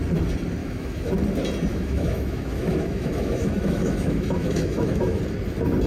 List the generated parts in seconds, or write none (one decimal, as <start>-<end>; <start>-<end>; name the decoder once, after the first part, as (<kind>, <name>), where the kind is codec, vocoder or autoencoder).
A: 0.6-1.1 (autoencoder, DAC-VAE); 1.7-5.2